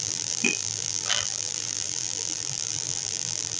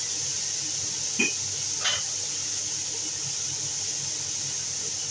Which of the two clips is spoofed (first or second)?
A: first